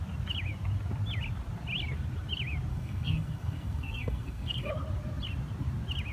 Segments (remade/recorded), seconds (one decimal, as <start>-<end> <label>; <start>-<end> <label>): 0.0-2.7 recorded; 2.7-4.7 remade; 4.7-6.1 recorded

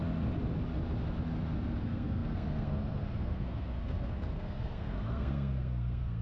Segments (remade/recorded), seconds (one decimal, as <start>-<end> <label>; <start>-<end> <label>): 0.0-1.8 recorded; 1.8-6.2 remade